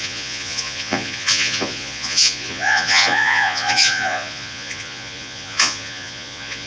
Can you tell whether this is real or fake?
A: fake